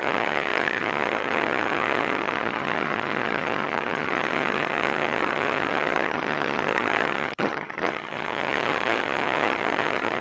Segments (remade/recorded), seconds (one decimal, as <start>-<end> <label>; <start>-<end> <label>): 0.0-10.2 remade